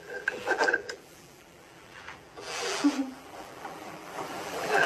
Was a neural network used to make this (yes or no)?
yes